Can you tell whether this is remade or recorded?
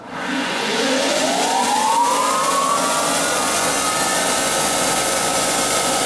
remade